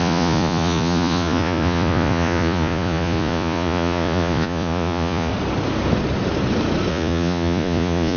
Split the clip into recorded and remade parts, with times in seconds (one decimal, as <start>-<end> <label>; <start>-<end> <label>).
0.0-5.3 remade; 5.3-6.9 recorded; 6.9-8.2 remade